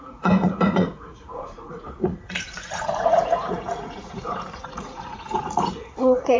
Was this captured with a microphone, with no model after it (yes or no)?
no